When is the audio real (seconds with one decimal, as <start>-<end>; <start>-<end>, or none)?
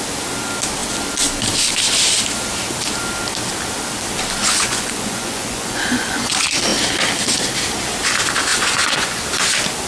0.0-4.4; 6.3-8.5; 9.2-9.9